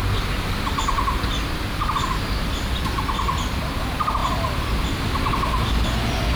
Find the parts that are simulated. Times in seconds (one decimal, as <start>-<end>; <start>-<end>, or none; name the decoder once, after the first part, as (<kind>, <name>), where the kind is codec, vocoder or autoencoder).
none